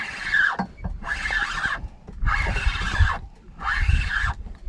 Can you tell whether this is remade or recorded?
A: recorded